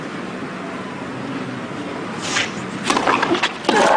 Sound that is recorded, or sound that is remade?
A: recorded